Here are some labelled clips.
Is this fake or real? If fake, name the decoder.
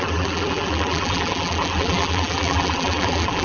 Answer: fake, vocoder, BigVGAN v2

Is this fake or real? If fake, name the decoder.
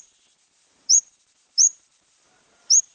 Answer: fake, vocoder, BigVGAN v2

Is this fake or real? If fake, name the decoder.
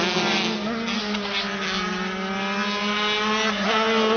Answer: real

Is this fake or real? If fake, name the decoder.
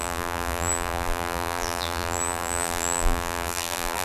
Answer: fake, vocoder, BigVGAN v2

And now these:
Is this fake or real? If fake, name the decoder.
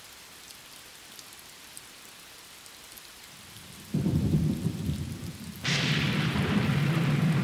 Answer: fake, vocoder, BigVGAN v2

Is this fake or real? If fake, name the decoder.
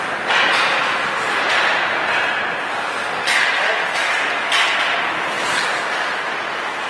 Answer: real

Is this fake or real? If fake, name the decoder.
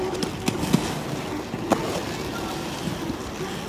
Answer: real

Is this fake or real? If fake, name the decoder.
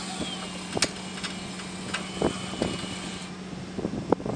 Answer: real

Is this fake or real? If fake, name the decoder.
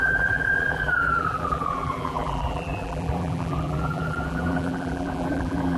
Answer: fake, vocoder, BigVGAN v2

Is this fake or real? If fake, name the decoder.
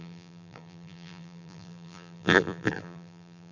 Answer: fake, vocoder, BigVGAN v2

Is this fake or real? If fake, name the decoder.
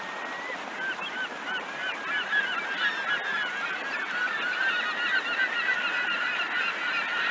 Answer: real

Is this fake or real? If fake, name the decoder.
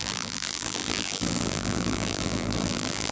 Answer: fake, vocoder, BigVGAN v2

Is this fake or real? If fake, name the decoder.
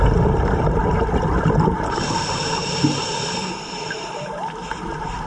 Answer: fake, vocoder, BigVGAN v2